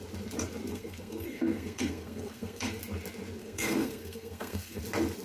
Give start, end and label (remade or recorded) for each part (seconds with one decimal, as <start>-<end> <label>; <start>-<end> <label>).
0.0-0.7 recorded; 0.7-2.8 remade; 2.8-3.4 recorded; 3.4-4.8 remade; 4.8-5.2 recorded